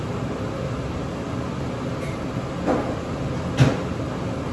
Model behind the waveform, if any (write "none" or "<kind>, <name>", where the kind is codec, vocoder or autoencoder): none